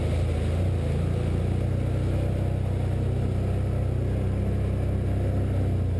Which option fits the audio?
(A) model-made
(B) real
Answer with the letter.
B